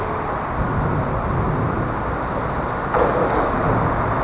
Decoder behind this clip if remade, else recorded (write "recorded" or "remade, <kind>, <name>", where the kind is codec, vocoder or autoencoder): recorded